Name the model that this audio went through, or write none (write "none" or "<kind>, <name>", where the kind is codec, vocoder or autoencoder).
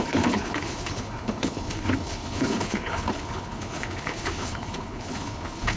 codec, HILCodec